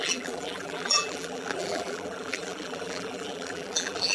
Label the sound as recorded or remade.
remade